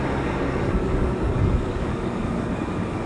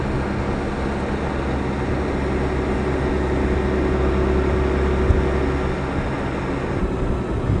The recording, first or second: second